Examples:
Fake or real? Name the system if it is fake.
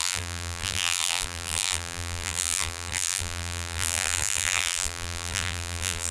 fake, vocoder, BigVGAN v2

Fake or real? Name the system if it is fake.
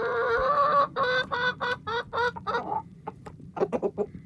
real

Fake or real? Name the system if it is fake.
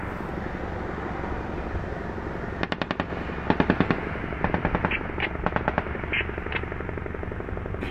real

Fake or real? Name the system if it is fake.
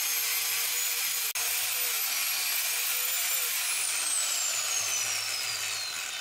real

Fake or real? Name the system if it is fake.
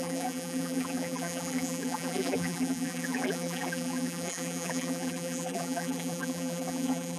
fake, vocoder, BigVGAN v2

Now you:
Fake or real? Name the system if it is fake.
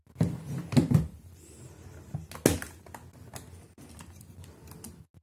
real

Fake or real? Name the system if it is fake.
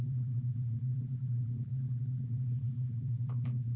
fake, vocoder, BigVGAN v2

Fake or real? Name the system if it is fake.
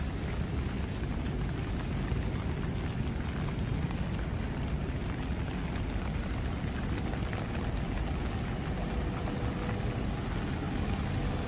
real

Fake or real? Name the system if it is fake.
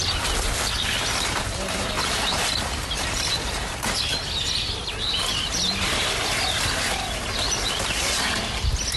real